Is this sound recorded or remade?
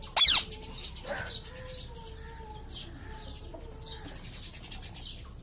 recorded